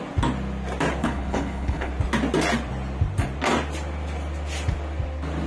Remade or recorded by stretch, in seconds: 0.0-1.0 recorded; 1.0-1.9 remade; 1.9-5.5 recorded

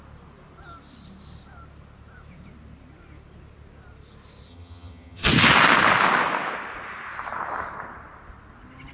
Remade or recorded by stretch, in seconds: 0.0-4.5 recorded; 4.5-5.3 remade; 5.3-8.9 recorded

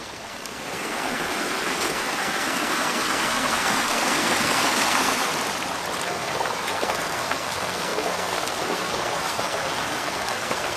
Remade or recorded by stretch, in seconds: 0.0-5.3 remade; 5.3-6.0 recorded; 6.0-10.8 remade